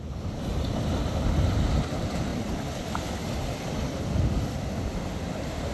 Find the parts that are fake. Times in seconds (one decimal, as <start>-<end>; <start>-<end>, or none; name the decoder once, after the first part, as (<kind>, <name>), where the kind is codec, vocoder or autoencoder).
0.5-1.6 (vocoder, BigVGAN v2)